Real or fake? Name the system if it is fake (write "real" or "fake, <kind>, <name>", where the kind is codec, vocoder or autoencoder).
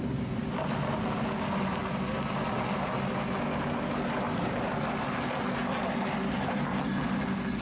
real